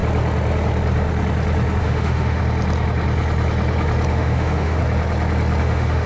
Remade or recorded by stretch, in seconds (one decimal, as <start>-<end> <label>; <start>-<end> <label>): 0.0-1.8 recorded; 1.8-2.4 remade; 2.4-4.1 recorded; 4.1-4.8 remade; 4.8-5.6 recorded; 5.6-6.1 remade